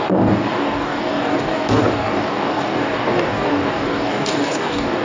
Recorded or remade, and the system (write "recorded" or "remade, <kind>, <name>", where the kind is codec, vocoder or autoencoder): remade, codec, DAC